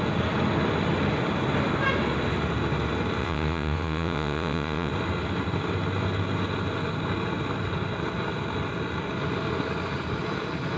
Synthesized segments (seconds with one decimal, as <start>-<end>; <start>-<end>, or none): 3.2-4.9